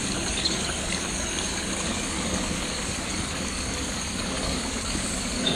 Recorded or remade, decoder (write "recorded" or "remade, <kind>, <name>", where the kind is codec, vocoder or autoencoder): remade, codec, DAC